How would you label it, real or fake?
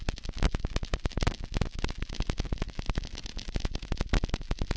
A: real